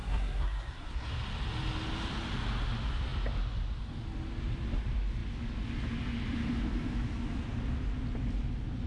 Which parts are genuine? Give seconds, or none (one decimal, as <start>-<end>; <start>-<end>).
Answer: 1.1-8.9